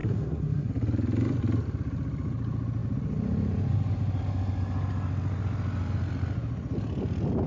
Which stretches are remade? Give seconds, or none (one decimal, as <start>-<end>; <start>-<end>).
0.0-0.7